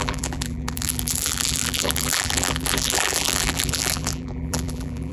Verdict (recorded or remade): remade